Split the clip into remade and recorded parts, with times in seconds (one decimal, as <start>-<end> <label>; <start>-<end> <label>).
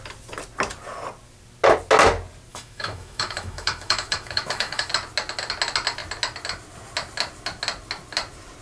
0.0-2.5 recorded; 2.5-4.9 remade; 4.9-8.6 recorded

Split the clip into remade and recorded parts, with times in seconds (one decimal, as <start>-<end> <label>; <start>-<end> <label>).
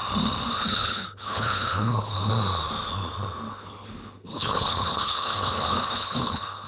0.0-0.5 recorded; 0.5-2.3 remade; 2.3-3.5 recorded; 3.5-6.7 remade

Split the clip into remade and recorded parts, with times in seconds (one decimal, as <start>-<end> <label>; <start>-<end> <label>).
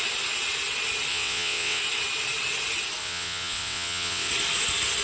0.0-1.1 recorded; 1.1-1.8 remade; 1.8-3.0 recorded; 3.0-4.3 remade; 4.3-5.0 recorded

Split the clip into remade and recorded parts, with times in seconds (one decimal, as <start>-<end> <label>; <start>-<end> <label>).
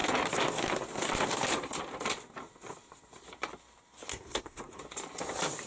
0.0-4.1 recorded; 4.1-4.8 remade; 4.8-5.7 recorded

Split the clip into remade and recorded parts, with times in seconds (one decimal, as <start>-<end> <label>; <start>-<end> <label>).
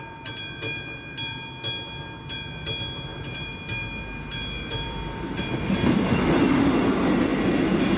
0.0-3.1 recorded; 3.1-3.6 remade; 3.6-4.7 recorded; 4.7-6.4 remade; 6.4-7.3 recorded; 7.3-8.0 remade